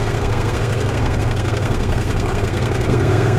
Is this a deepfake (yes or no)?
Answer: yes